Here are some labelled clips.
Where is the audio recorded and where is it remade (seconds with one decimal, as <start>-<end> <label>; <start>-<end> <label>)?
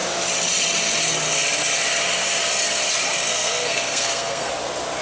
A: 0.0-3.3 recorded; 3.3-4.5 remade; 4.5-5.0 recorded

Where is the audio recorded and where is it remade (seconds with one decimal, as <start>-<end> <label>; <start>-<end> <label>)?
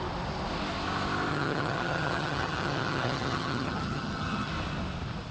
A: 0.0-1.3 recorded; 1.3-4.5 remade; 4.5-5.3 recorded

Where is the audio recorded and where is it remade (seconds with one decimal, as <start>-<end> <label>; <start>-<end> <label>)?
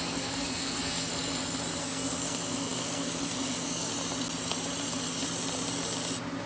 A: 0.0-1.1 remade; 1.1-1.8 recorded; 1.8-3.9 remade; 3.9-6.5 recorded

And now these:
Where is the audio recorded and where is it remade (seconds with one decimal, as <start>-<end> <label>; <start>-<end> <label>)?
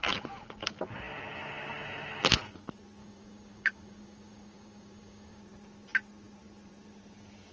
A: 0.0-3.0 recorded; 3.0-5.4 remade; 5.4-7.5 recorded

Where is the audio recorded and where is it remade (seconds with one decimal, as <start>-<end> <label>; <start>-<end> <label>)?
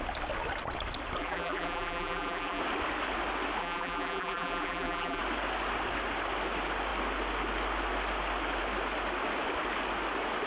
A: 0.0-1.2 recorded; 1.2-2.6 remade; 2.6-3.6 recorded; 3.6-5.2 remade; 5.2-10.5 recorded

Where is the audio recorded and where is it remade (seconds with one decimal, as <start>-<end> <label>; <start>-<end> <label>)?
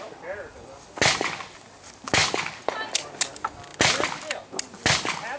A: 0.0-5.4 recorded